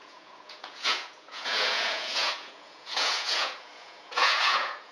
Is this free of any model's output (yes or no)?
no